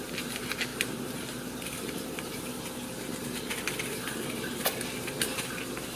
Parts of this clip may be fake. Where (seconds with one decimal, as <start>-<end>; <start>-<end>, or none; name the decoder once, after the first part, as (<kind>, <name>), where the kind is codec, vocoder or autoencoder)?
none

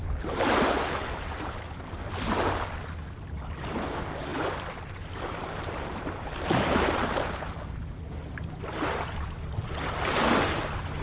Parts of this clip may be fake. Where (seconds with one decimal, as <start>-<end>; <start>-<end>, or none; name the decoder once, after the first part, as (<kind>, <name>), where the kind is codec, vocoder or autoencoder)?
none

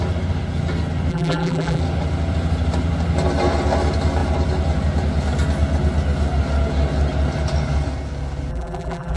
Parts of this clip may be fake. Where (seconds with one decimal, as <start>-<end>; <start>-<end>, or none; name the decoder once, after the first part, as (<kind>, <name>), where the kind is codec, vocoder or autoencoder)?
1.1-1.8 (vocoder, BigVGAN v2); 8.5-9.2

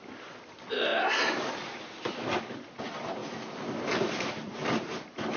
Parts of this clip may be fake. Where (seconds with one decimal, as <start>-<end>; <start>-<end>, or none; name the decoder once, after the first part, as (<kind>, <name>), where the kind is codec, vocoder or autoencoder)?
0.0-0.9 (vocoder, BigVGAN v2); 1.5-3.2; 4.0-5.4

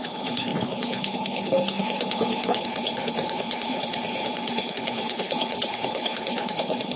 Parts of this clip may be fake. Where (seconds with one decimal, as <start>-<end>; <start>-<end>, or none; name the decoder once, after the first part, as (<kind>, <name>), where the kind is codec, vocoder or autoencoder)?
0.0-7.0 (codec, HILCodec)